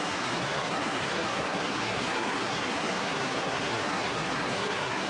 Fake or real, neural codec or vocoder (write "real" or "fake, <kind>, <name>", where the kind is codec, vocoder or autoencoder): fake, codec, SNAC